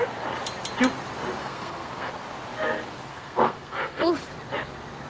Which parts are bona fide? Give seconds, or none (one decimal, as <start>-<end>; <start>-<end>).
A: 0.0-1.4; 2.1-3.1; 4.1-5.1